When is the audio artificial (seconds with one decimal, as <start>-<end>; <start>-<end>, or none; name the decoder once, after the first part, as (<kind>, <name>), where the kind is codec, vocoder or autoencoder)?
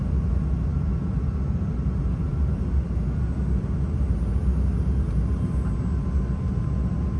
none